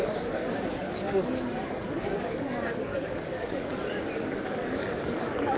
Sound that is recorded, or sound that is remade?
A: remade